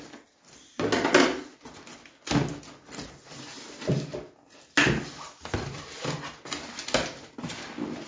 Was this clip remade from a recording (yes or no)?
no